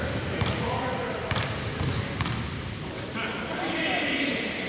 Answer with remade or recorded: remade